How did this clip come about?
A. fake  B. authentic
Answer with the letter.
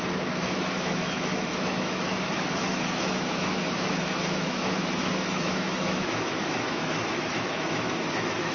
A